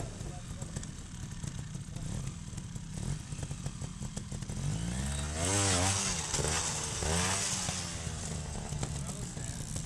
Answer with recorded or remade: recorded